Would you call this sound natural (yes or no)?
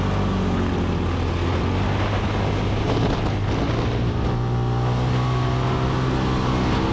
yes